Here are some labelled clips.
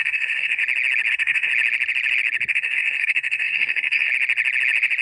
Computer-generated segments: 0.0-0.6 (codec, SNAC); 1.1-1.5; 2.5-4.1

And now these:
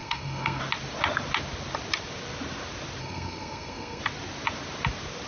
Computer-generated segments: 0.0-0.6 (codec, SNAC); 3.0-4.0

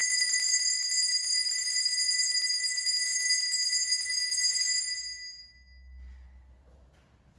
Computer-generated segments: 0.0-0.9 (vocoder, BigVGAN v2); 1.3-1.8

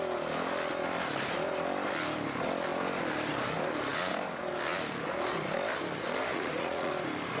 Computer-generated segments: 6.3-6.9 (vocoder, Vocos)

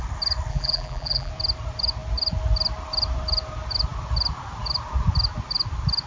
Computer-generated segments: 0.5-1.3 (vocoder, BigVGAN v2)

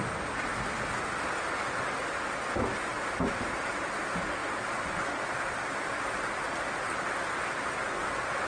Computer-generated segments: none